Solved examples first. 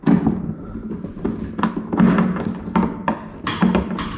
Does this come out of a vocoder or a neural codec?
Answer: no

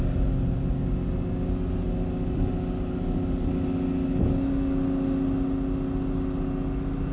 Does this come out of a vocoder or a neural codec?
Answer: no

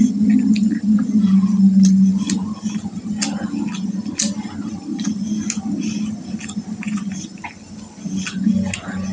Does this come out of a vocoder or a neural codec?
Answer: no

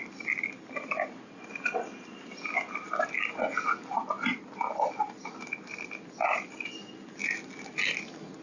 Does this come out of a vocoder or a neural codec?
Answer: no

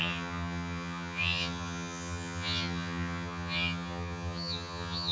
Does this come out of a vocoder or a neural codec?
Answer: yes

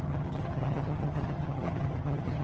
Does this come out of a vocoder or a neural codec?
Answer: yes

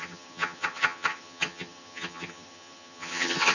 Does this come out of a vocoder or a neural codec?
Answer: yes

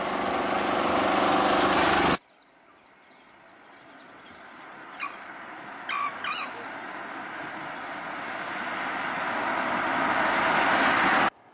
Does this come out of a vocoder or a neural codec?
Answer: no